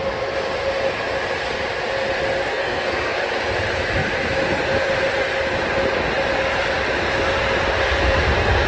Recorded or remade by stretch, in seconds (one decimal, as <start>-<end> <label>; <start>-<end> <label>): 0.0-2.5 recorded; 2.5-3.2 remade; 3.2-8.7 recorded